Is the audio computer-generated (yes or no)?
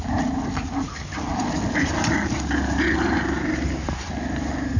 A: no